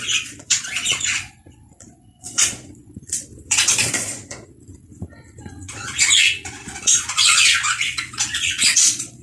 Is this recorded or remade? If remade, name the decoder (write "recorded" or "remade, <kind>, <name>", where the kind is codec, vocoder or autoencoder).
remade, vocoder, Vocos